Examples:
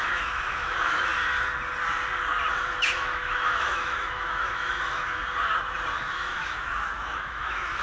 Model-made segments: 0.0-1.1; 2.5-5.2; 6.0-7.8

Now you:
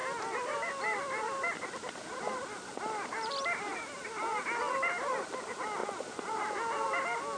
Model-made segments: none

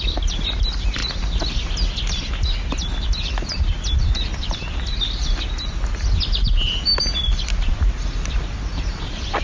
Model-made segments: 7.7-9.4

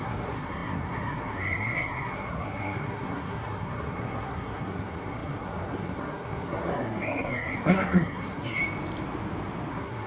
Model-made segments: 0.0-8.6; 9.7-10.1

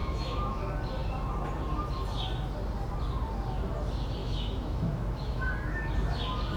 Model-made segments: 0.0-0.6; 4.2-5.5

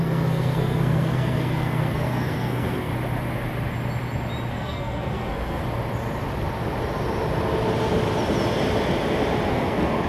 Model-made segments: 0.0-2.9; 4.5-5.6; 9.5-10.1